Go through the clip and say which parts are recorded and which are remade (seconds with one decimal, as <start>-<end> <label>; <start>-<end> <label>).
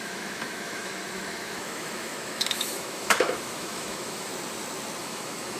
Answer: 0.0-4.3 remade; 4.3-5.0 recorded; 5.0-5.6 remade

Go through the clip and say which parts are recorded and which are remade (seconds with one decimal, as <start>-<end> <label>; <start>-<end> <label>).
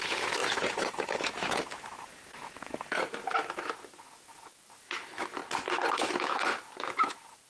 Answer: 0.0-5.4 remade; 5.4-6.0 recorded; 6.0-7.5 remade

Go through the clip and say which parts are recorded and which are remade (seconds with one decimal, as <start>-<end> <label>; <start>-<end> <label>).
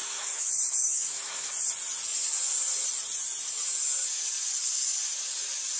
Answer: 0.0-0.5 remade; 0.5-0.9 recorded; 0.9-1.5 remade; 1.5-5.8 recorded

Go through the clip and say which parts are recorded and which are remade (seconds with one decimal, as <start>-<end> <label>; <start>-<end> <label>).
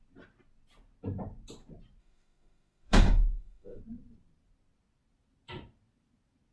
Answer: 0.0-2.0 recorded; 2.0-3.8 remade; 3.8-6.5 recorded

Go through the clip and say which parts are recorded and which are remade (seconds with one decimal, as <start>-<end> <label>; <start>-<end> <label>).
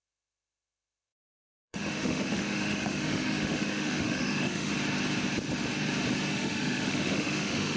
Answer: 0.0-4.7 remade; 4.7-6.3 recorded; 6.3-7.8 remade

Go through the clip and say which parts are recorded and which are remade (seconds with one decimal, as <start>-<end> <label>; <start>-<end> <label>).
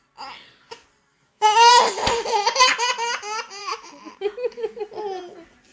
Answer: 0.0-1.1 recorded; 1.1-1.7 remade; 1.7-3.6 recorded; 3.6-4.8 remade; 4.8-5.7 recorded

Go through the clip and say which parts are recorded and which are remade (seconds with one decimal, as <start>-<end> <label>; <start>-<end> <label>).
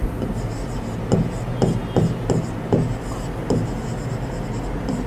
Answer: 0.0-5.1 recorded